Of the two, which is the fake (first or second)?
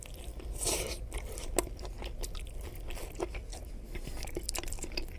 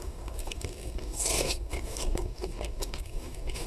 second